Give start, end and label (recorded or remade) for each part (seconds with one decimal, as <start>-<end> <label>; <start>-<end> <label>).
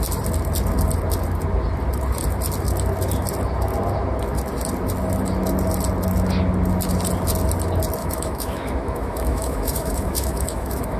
0.0-8.0 recorded; 8.0-11.0 remade